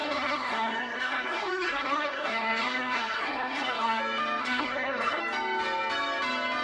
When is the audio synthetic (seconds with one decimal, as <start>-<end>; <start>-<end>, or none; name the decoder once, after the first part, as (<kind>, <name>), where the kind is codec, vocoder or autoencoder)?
0.0-4.0 (codec, SNAC); 4.4-5.2